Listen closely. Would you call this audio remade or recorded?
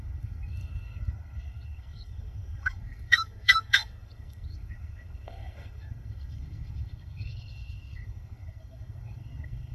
remade